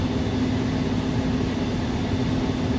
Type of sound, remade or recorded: recorded